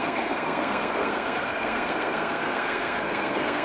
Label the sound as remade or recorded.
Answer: remade